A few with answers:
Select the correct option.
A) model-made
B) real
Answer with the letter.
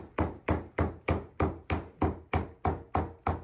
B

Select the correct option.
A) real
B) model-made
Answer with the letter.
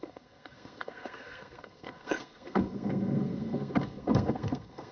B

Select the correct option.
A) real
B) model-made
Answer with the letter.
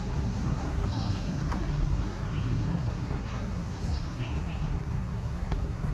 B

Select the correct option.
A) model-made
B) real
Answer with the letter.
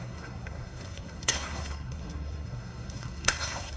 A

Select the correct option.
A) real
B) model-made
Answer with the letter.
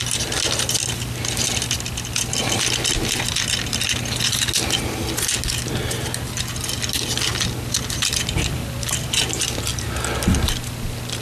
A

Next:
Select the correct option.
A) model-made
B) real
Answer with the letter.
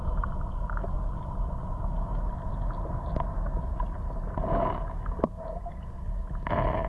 B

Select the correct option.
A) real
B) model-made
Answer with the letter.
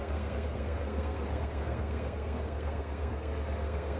B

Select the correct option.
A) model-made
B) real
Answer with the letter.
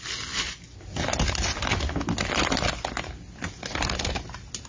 B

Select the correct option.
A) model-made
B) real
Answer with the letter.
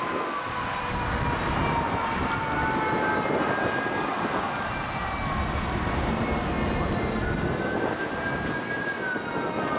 B